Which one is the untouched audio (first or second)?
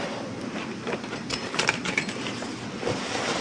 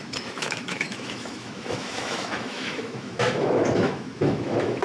first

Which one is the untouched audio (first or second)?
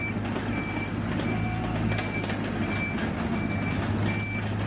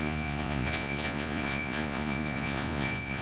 first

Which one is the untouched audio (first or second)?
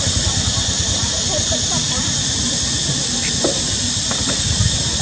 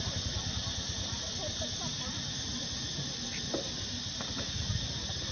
second